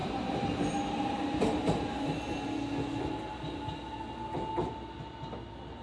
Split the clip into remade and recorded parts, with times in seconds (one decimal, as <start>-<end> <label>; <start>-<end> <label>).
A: 0.0-2.2 remade; 2.2-5.8 recorded